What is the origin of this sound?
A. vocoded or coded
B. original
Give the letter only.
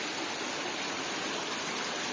B